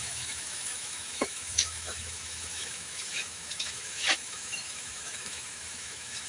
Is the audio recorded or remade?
remade